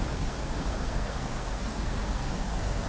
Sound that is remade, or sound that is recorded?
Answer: remade